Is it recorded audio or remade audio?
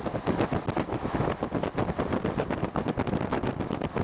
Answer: recorded